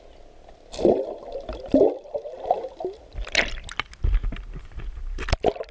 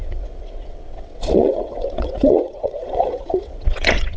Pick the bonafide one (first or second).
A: first